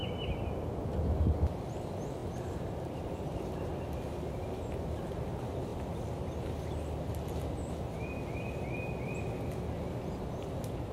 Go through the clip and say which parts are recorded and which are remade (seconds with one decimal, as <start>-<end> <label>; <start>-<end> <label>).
0.0-10.9 recorded